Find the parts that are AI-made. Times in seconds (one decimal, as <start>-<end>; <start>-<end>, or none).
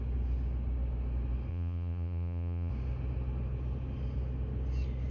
1.5-2.7